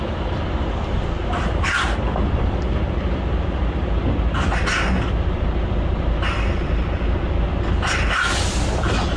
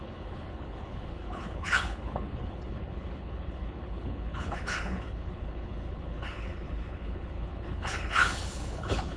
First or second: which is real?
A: first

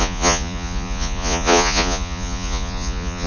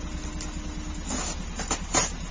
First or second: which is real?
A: second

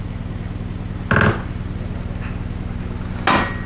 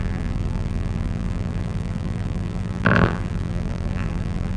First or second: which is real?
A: first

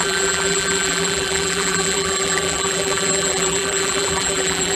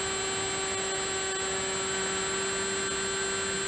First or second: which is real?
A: second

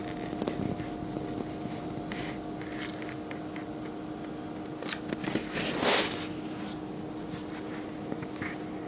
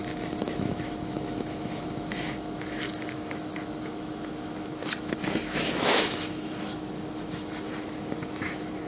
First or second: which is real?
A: first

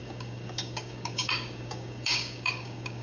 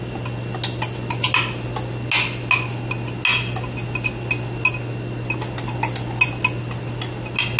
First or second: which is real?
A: second